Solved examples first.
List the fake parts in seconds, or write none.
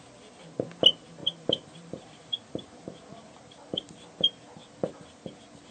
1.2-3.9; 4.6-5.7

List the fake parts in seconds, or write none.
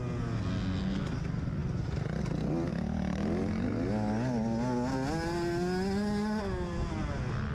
none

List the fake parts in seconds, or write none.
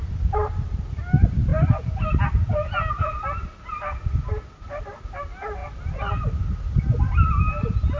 none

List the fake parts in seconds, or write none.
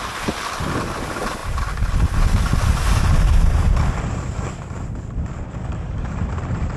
5.6-6.2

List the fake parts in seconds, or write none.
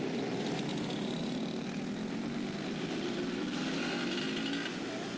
0.7-1.2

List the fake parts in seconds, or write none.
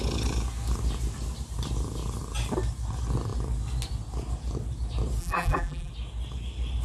5.2-5.9